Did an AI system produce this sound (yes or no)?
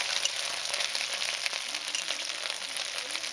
no